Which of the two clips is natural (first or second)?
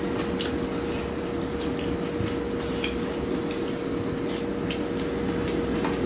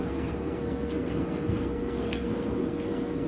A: first